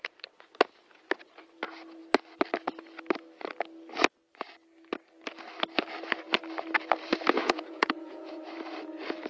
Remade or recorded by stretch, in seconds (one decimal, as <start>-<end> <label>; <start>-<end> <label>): 0.0-7.4 recorded; 7.4-8.4 remade; 8.4-9.3 recorded